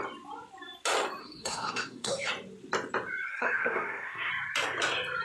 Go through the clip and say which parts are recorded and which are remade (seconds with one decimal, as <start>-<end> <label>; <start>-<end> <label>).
0.0-1.2 recorded; 1.2-2.3 remade; 2.3-3.3 recorded; 3.3-4.3 remade; 4.3-5.2 recorded